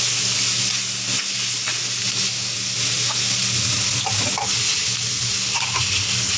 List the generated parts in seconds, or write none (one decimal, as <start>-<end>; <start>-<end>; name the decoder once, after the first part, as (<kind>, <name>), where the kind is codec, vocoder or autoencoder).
none